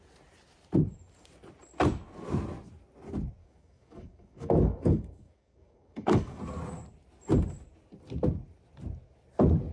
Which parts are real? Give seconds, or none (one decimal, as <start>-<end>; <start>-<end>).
0.0-3.4; 6.4-9.7